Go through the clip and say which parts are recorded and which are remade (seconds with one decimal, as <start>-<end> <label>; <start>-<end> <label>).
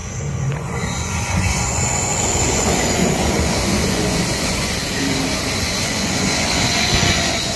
0.0-4.8 remade; 4.8-5.6 recorded; 5.6-7.6 remade